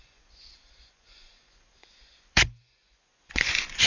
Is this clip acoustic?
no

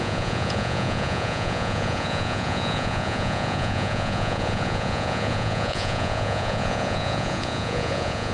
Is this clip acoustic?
no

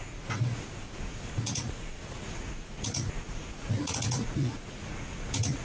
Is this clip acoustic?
no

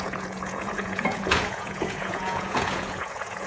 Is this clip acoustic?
no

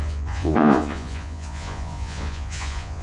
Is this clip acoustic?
no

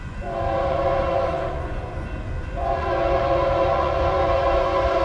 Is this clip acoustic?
no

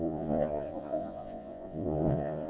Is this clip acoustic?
no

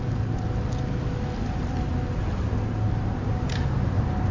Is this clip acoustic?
yes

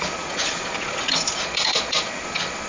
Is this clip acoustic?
no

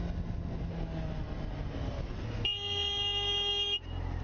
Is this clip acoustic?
yes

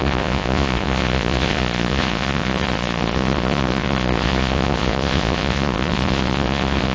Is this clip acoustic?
no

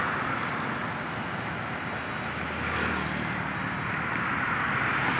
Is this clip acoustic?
yes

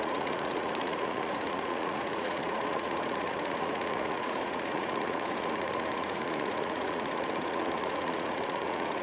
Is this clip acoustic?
no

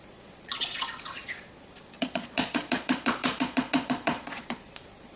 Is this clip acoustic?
no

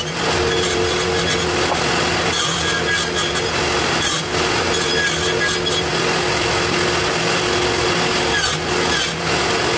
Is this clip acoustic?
yes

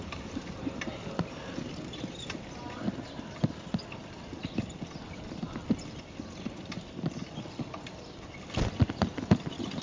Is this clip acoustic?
yes